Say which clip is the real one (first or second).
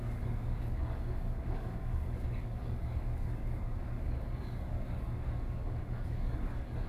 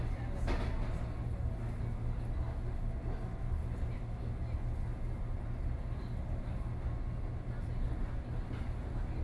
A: second